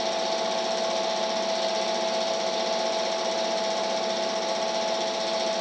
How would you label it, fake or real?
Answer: real